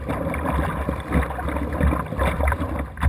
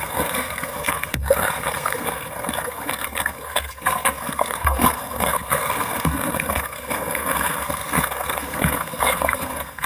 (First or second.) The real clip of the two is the first